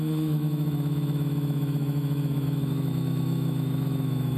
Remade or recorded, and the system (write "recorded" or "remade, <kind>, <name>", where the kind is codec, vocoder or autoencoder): remade, autoencoder, DAC-VAE